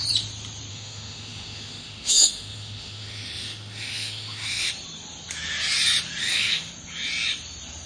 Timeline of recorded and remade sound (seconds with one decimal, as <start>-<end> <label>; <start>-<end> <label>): 0.0-0.7 recorded; 0.7-4.7 remade; 4.7-6.2 recorded; 6.2-6.7 remade; 6.7-7.9 recorded